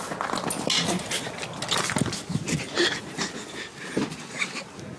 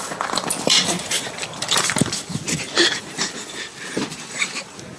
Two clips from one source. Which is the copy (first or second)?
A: second